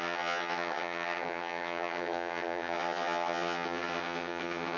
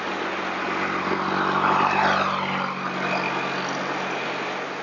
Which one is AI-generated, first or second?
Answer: first